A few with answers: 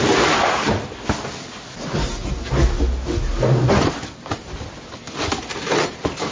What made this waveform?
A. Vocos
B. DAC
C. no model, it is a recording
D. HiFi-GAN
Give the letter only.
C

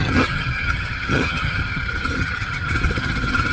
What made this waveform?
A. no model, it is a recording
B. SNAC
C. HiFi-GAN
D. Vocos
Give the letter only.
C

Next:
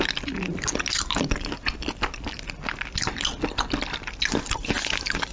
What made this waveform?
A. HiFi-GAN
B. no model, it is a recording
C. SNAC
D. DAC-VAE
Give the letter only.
B